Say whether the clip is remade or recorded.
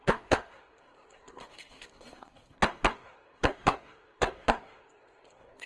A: remade